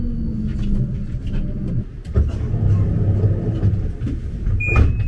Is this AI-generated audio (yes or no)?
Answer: no